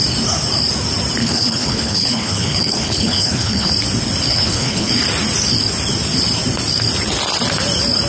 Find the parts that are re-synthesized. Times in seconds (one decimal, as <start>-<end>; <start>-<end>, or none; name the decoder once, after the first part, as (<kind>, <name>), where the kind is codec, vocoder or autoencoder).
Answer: 1.2-3.7 (codec, HILCodec); 4.3-4.9